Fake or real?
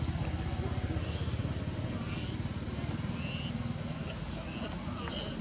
real